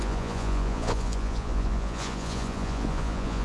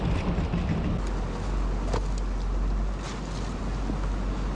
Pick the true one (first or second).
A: second